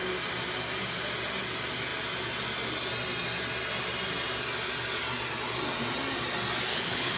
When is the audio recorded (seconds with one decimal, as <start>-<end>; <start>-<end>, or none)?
0.0-6.7